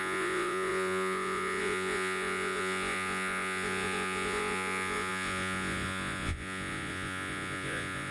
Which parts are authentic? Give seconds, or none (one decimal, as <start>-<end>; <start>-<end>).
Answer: none